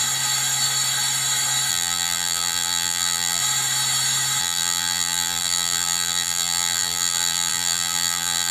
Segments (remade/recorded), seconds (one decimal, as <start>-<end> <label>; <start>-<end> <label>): 0.0-1.7 recorded; 1.7-3.4 remade; 3.4-4.4 recorded; 4.4-8.5 remade